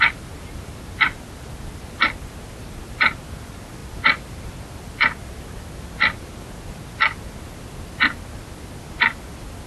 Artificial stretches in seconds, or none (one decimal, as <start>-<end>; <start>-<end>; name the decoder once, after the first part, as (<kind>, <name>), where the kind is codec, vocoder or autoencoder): none